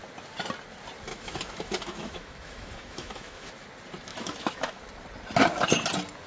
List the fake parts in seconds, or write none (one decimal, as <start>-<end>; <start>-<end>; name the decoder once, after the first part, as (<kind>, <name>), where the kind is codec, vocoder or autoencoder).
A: 1.1-3.5 (autoencoder, DAC-VAE); 4.1-4.8